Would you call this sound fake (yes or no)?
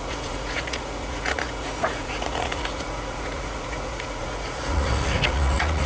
yes